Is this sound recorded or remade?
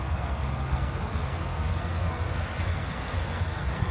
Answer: remade